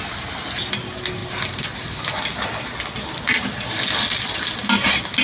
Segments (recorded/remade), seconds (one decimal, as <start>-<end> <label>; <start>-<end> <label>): 0.0-5.2 recorded